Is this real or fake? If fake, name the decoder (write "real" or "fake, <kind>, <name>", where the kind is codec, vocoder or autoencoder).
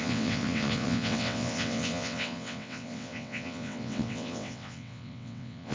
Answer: fake, vocoder, WaveNeXt